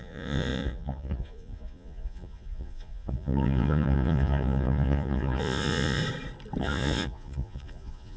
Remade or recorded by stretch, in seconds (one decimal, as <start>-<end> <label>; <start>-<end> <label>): 0.0-6.0 remade; 6.0-6.6 recorded; 6.6-8.2 remade